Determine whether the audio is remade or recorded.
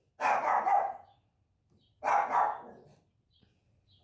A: recorded